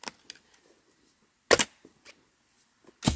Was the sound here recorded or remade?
recorded